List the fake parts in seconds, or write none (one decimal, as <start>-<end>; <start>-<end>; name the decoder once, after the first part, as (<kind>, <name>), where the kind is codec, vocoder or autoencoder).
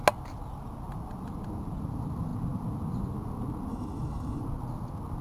3.7-4.4 (autoencoder, DAC-VAE)